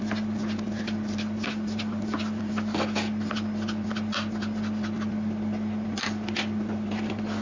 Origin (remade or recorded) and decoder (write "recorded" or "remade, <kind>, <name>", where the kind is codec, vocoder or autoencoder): recorded